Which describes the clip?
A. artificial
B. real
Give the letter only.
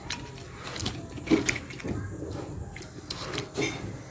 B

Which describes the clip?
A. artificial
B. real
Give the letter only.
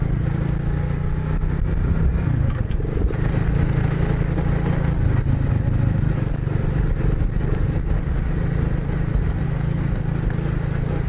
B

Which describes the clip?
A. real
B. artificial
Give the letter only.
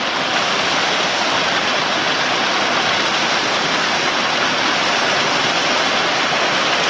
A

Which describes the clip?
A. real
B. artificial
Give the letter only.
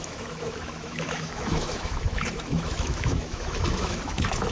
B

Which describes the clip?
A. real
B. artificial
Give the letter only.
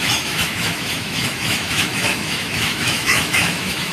B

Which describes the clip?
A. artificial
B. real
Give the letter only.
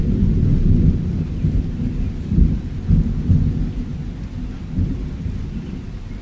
B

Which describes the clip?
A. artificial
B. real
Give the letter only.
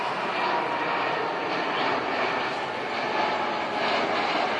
B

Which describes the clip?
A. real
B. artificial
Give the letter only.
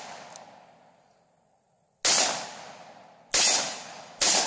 A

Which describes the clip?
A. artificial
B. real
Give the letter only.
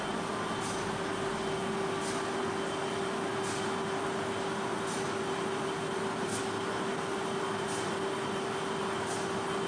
B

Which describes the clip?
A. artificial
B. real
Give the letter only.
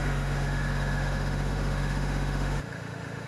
A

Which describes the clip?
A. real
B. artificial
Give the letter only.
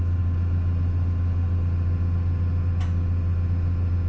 A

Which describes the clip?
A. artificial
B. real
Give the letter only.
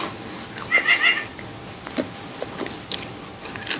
B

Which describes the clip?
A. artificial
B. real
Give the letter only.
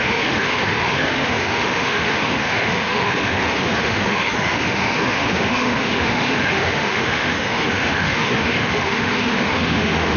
A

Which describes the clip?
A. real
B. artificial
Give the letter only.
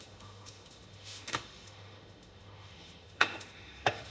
B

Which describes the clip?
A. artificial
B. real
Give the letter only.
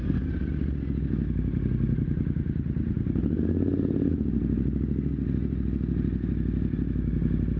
B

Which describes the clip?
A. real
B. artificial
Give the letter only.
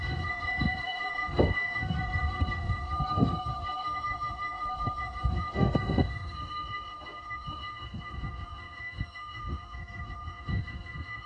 B